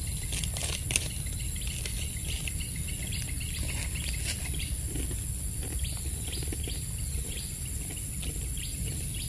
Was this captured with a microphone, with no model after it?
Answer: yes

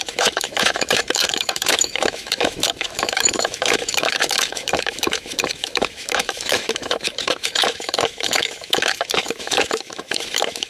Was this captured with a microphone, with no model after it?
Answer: no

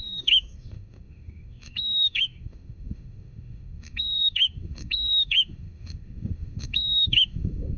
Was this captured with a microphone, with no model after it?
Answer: no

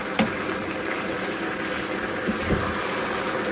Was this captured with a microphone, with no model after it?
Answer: yes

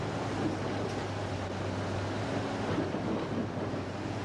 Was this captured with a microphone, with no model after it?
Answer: yes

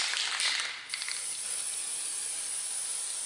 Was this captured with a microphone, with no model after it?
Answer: yes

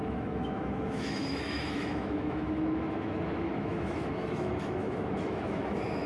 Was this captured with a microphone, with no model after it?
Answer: no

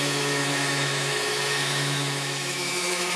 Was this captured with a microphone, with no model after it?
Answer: no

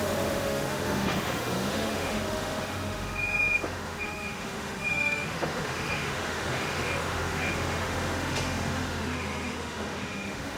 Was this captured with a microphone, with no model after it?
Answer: no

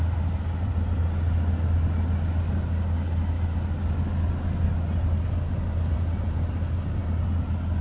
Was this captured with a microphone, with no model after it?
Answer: yes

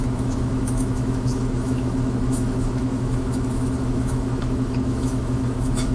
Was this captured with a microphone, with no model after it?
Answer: no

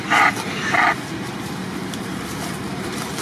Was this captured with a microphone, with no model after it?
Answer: yes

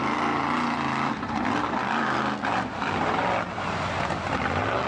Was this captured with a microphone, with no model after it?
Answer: yes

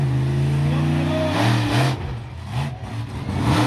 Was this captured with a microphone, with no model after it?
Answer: yes